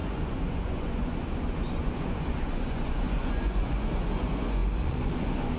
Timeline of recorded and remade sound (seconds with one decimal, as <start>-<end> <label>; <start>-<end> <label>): 0.0-5.6 remade